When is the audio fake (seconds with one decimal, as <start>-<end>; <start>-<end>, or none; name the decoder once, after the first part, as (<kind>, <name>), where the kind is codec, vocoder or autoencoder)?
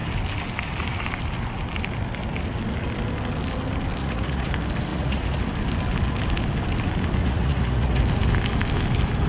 4.0-4.5 (vocoder, Vocos); 4.9-5.4; 7.2-8.0